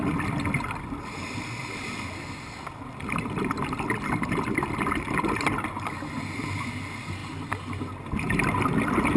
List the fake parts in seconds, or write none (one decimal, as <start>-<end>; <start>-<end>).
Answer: none